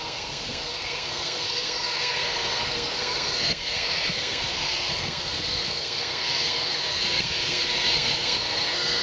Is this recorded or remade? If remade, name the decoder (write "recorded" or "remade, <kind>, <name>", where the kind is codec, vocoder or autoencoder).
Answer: remade, codec, SNAC